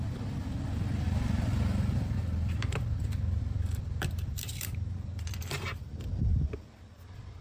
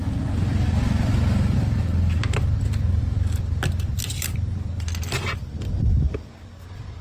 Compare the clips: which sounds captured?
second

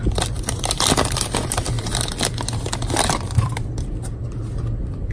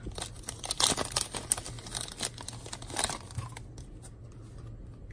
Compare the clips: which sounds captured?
second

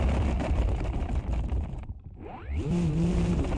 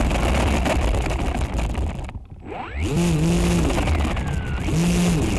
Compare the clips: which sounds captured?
second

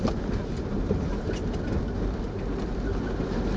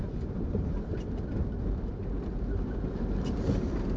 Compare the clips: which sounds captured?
first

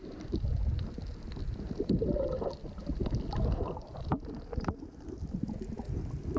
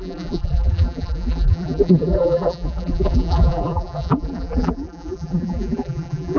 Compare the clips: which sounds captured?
first